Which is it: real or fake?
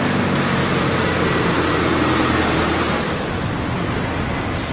real